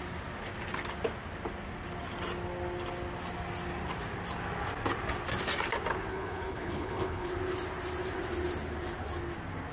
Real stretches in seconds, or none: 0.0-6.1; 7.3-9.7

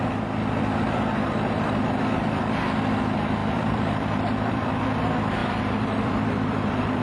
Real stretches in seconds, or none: 0.0-3.4; 4.7-5.4

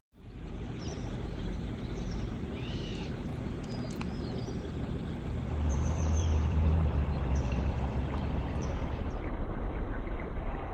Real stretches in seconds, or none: 3.3-5.7

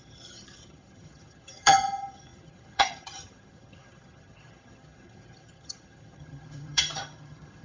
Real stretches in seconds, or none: none

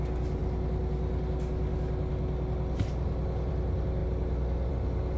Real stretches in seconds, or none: 0.0-5.2